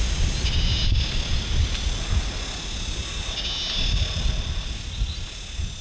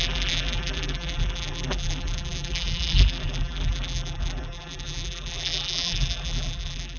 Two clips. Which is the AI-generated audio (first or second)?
second